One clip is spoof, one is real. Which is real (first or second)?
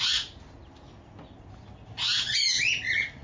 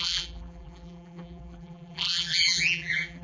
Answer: first